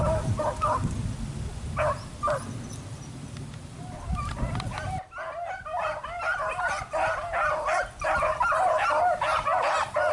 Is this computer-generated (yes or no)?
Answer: no